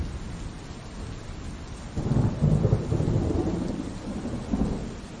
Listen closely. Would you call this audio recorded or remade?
recorded